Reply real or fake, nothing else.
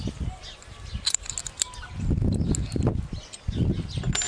real